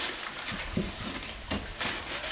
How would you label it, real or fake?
real